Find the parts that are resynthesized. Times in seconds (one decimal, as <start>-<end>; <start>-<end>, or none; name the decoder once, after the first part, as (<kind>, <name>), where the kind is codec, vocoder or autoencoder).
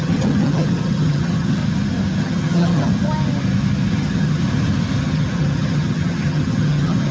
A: 0.0-1.6 (vocoder, HiFi-GAN); 2.2-2.9; 3.9-4.4; 5.0-7.1